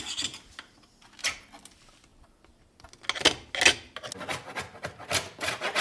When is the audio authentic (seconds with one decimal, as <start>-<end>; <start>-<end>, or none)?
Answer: 0.0-5.8